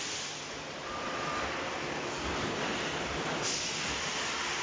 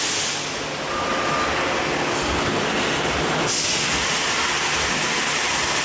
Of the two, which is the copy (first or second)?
first